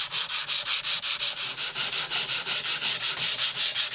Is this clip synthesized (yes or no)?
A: no